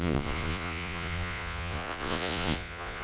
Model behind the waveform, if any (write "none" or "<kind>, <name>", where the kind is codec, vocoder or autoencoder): vocoder, Vocos